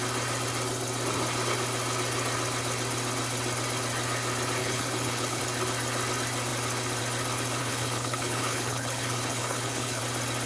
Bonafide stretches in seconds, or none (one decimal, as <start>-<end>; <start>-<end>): 0.0-4.6; 5.4-7.6; 10.0-10.5